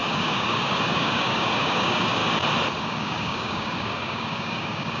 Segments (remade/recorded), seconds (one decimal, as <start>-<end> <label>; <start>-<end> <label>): 0.0-2.2 remade; 2.2-2.8 recorded; 2.8-5.0 remade